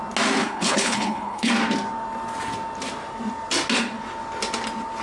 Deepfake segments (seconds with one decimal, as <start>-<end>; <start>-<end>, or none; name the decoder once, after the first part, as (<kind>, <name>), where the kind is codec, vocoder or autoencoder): 0.4-1.5 (codec, HILCodec)